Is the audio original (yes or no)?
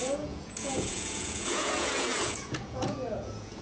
no